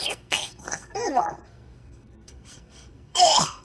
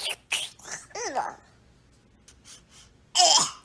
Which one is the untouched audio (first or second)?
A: second